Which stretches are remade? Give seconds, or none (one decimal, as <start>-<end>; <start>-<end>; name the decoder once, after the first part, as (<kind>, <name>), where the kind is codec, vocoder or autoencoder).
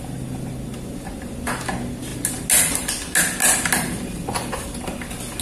none